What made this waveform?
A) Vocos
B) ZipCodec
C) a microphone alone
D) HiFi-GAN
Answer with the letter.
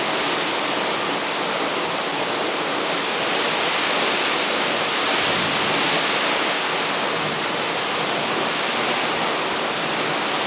C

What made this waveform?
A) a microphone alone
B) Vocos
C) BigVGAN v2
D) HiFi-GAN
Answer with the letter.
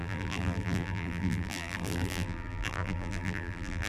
C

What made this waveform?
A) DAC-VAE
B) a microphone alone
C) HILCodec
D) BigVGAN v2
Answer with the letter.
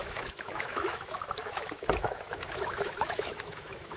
A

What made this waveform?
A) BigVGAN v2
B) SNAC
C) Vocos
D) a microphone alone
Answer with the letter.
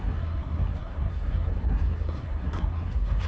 B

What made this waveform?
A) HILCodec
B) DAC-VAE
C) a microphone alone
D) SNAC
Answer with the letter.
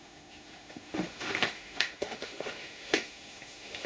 B